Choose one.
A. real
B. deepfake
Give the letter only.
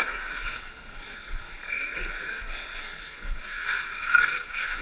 B